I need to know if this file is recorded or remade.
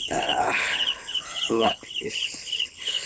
remade